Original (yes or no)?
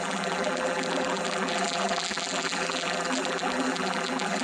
no